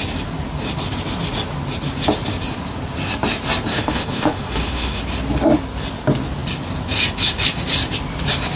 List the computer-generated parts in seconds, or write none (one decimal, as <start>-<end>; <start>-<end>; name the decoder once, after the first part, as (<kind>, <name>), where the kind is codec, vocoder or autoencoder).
3.7-5.0 (autoencoder, DAC-VAE)